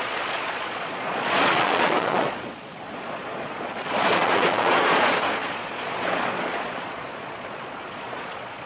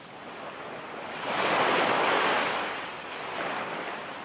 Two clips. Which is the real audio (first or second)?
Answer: second